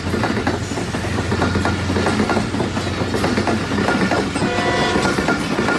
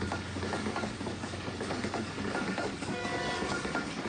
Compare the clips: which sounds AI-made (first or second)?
second